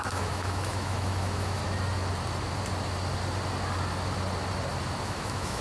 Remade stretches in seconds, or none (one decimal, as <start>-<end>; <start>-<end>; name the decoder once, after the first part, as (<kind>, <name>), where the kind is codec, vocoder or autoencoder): 0.0-1.6 (autoencoder, DAC-VAE); 5.0-5.6